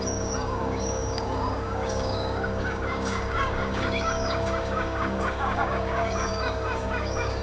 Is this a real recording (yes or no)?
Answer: no